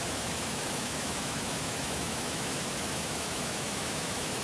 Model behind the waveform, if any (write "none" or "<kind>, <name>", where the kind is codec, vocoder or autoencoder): autoencoder, DAC-VAE